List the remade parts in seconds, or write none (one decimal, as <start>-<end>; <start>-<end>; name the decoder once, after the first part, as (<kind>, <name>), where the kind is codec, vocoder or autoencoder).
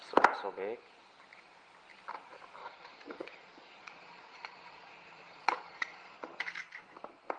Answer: 2.6-6.4 (vocoder, Vocos)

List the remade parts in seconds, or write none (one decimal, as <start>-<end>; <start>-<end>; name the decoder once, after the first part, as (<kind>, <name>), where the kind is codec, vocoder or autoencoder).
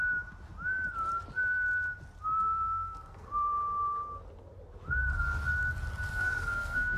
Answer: 2.4-3.3 (codec, SNAC); 6.1-7.0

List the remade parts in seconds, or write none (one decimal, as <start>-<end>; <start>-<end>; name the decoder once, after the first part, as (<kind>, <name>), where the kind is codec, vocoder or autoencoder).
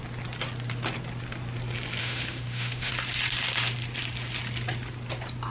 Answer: 2.0-2.9 (autoencoder, DAC-VAE)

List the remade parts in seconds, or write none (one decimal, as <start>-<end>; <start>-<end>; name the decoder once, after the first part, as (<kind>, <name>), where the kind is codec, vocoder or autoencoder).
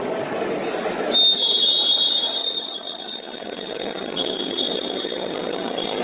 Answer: 2.4-6.0 (vocoder, HiFi-GAN)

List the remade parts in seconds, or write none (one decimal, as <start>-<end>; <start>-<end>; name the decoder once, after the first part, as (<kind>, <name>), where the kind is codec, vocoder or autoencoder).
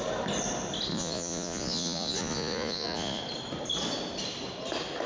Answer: 0.9-3.2 (vocoder, Vocos)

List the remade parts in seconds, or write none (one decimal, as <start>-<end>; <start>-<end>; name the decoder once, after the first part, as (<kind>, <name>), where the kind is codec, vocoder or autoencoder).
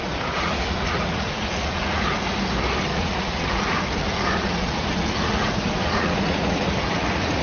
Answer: 0.0-2.0 (vocoder, Vocos); 2.9-7.4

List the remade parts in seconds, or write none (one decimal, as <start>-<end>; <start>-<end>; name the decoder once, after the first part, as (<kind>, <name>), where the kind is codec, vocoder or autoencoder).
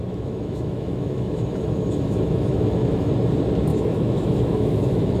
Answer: 0.0-3.1 (autoencoder, DAC-VAE); 3.7-5.2